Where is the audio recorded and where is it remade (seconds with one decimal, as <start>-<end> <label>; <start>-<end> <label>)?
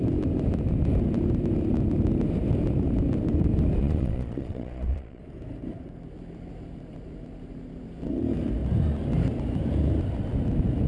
0.0-3.8 recorded; 3.8-5.2 remade; 5.2-10.9 recorded